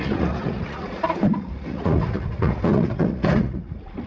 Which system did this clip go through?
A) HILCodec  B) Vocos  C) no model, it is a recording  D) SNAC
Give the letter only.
B